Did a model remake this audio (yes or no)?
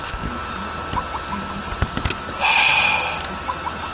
no